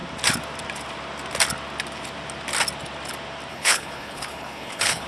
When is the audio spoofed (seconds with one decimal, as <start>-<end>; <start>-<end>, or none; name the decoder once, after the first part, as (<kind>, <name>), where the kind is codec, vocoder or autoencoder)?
3.5-5.1 (codec, HILCodec)